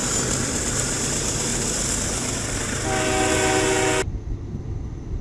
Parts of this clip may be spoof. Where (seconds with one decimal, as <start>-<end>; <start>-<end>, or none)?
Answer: 0.7-1.5; 4.6-5.2